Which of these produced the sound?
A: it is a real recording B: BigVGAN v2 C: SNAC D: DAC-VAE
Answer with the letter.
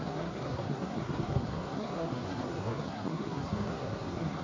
C